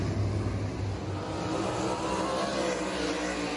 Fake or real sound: real